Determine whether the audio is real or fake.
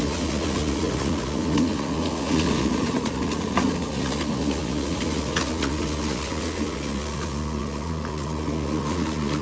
fake